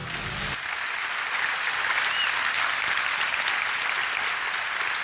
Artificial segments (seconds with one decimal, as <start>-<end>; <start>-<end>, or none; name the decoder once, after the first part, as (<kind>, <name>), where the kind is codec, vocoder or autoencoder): none